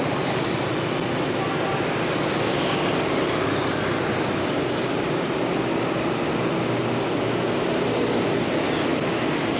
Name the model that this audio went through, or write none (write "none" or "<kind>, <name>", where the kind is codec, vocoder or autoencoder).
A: none